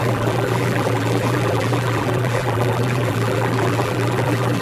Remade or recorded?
remade